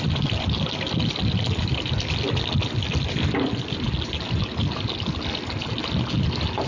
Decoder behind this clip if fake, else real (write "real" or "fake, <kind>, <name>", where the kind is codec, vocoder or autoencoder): real